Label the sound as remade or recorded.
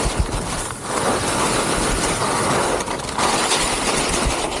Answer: recorded